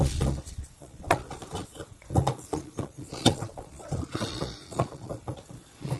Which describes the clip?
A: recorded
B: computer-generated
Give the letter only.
B